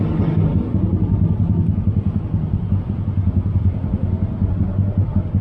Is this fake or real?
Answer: real